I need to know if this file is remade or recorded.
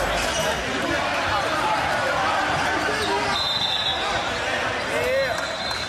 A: recorded